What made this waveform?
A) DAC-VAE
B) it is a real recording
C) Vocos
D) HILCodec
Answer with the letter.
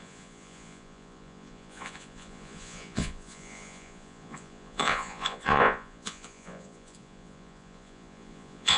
C